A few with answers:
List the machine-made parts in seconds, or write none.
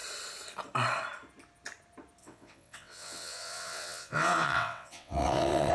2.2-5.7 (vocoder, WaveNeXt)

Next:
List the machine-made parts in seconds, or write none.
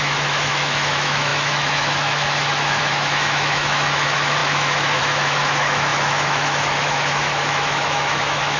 0.0-8.6 (autoencoder, DAC-VAE)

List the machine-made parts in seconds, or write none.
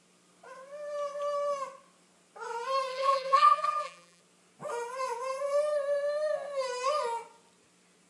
2.9-4.2 (vocoder, BigVGAN v2)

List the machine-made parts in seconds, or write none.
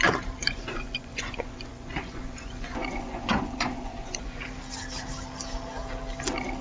0.4-4.4 (vocoder, Vocos)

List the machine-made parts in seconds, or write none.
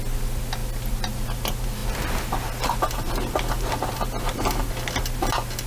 none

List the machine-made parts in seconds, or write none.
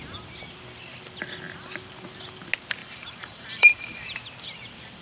2.8-4.2 (vocoder, BigVGAN v2)